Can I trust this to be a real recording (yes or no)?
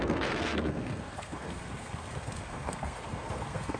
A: no